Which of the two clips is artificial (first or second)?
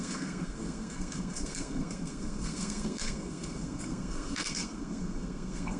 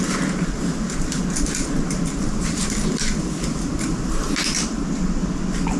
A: first